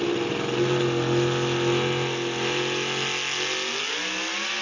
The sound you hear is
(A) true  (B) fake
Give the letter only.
A